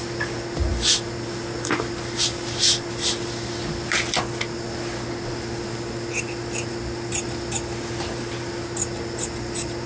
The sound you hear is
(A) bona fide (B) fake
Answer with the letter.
A